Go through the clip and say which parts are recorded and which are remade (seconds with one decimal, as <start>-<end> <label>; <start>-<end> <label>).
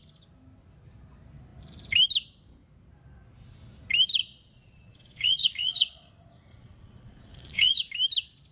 0.0-4.2 recorded; 4.2-6.1 remade; 6.1-6.5 recorded; 6.5-7.8 remade; 7.8-8.5 recorded